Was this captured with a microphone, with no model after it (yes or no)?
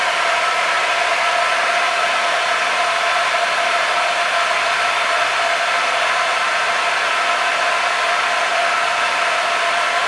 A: yes